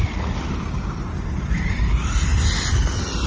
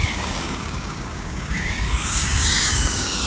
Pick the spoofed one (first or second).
second